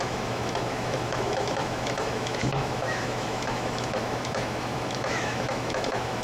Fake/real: fake